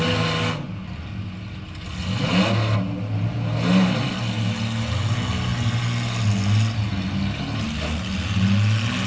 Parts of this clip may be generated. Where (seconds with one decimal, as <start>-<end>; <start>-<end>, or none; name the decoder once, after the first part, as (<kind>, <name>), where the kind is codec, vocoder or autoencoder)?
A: none

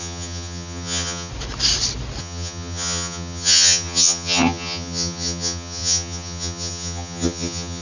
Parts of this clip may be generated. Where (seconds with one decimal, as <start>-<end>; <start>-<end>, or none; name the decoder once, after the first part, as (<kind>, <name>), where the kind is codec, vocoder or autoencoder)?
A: 0.0-1.3 (vocoder, HiFi-GAN); 2.2-7.8